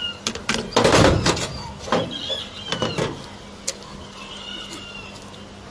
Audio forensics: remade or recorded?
recorded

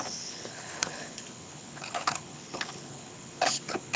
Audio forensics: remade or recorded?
remade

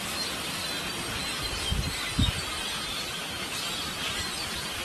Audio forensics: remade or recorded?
recorded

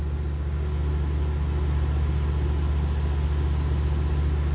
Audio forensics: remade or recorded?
recorded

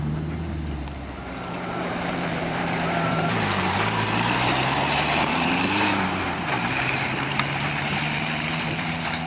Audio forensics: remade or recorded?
remade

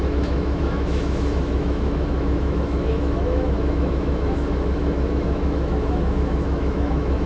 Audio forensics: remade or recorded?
remade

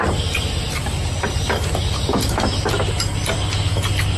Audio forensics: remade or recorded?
recorded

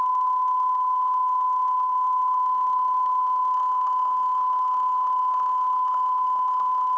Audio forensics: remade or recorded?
remade